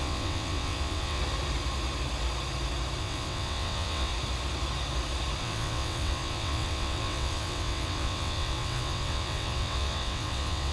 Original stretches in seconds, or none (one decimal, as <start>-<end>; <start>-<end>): 1.2-3.0; 4.1-5.4